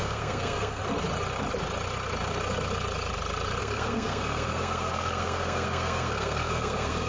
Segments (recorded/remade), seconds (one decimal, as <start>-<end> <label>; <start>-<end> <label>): 0.0-0.8 remade; 0.8-3.6 recorded; 3.6-7.1 remade

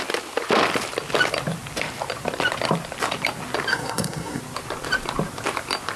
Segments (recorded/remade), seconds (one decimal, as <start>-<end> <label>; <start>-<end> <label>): 0.0-3.7 recorded; 3.7-4.4 remade; 4.4-6.0 recorded

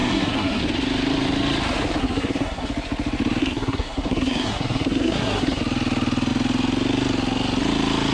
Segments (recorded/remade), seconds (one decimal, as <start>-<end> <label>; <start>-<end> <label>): 0.0-0.6 remade; 0.6-2.0 recorded; 2.0-2.7 remade; 2.7-3.4 recorded; 3.4-5.6 remade; 5.6-8.1 recorded

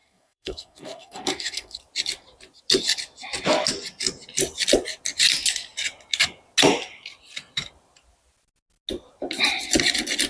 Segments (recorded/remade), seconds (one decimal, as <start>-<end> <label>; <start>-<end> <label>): 0.0-1.8 remade; 1.8-10.3 recorded

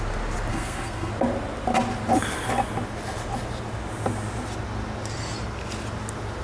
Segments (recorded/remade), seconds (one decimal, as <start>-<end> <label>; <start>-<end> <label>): 0.0-0.5 recorded; 0.5-1.1 remade; 1.1-6.4 recorded

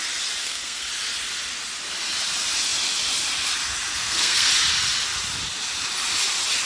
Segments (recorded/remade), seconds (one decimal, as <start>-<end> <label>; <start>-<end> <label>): 0.0-0.4 recorded; 0.4-0.9 remade; 0.9-4.0 recorded; 4.0-4.5 remade; 4.5-6.7 recorded

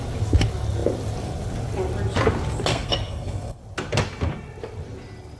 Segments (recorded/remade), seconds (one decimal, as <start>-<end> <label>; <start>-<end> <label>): 0.0-2.7 recorded; 2.7-3.6 remade; 3.6-5.4 recorded

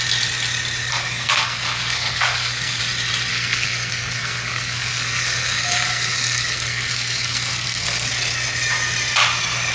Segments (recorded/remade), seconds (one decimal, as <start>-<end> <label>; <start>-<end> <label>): 0.0-0.9 recorded; 0.9-2.8 remade; 2.8-3.3 recorded; 3.3-8.1 remade; 8.1-9.7 recorded